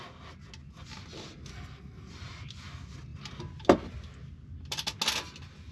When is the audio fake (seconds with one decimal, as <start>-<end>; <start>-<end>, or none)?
1.5-2.1